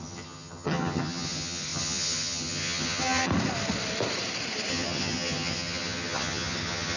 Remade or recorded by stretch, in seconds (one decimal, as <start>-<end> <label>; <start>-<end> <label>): 0.0-3.3 remade; 3.3-4.7 recorded; 4.7-7.0 remade